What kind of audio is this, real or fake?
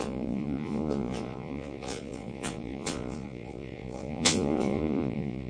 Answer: fake